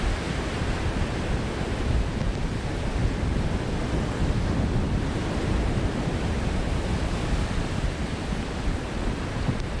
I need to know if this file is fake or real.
real